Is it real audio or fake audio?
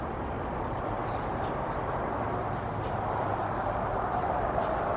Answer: real